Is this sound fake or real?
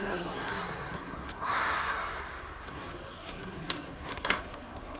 fake